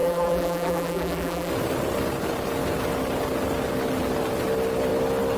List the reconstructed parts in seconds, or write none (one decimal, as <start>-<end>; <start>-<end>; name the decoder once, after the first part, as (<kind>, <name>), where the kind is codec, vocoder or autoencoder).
0.0-1.5 (vocoder, BigVGAN v2)